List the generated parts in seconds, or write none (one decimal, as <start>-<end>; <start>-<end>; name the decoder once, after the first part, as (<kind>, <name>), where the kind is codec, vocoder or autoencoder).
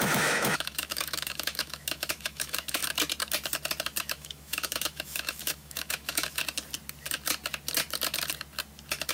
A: 0.0-2.8 (autoencoder, DAC-VAE); 4.0-6.4